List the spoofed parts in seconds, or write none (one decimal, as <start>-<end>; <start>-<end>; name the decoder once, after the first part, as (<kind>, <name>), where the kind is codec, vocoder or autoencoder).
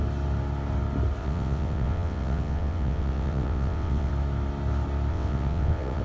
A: 1.2-4.1 (vocoder, WaveNeXt); 5.1-6.0